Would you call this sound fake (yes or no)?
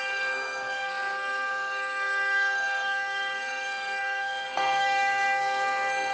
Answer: yes